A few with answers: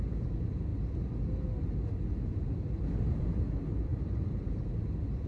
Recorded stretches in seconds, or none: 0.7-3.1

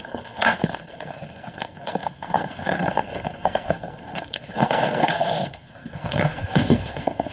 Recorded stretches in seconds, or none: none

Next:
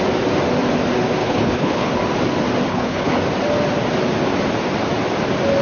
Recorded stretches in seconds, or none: 0.0-1.2; 1.9-2.7; 3.2-5.6

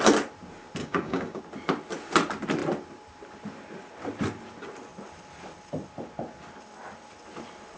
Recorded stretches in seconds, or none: 0.0-0.8; 1.4-7.8

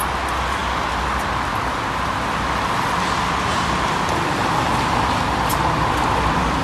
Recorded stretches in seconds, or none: 0.0-6.6

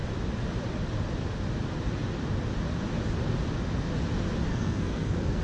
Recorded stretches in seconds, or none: 0.0-4.5

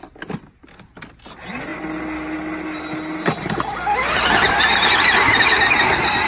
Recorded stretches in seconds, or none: 0.0-6.3